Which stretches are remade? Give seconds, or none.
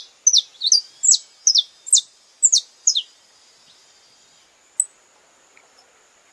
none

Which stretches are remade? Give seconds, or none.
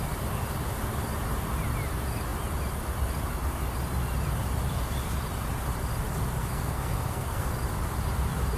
6.4-7.5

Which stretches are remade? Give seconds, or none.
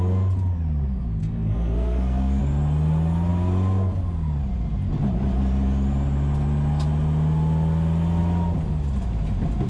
1.2-2.4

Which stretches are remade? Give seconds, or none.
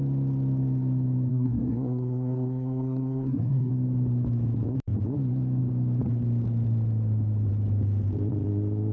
1.3-3.7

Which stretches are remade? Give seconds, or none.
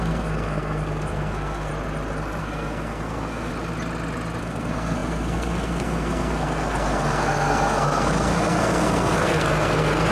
0.0-1.7; 2.4-3.5; 4.4-10.1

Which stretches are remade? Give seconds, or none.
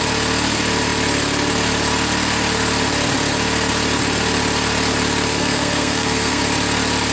5.3-6.4